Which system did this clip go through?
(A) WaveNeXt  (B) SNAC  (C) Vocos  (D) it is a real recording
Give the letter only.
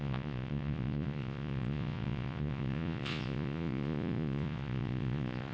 C